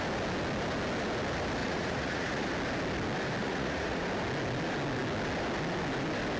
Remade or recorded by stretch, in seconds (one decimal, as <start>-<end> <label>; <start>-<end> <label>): 0.0-1.6 recorded; 1.6-2.5 remade; 2.5-3.4 recorded; 3.4-4.0 remade; 4.0-6.4 recorded